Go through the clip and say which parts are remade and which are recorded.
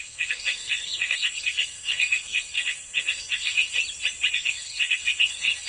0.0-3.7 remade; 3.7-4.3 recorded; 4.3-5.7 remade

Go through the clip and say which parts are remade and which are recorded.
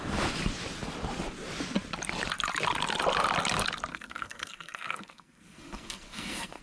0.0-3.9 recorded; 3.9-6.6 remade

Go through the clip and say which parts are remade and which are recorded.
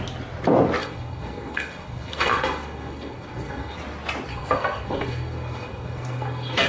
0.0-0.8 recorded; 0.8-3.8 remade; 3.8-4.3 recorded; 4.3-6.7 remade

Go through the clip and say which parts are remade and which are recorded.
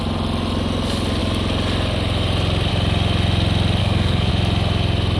0.0-3.8 recorded; 3.8-4.3 remade; 4.3-5.2 recorded